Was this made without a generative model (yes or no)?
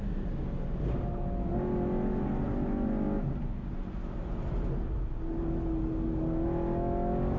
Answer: yes